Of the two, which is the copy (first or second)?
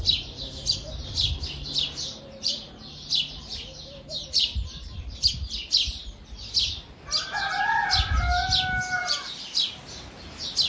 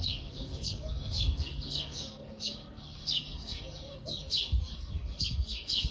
second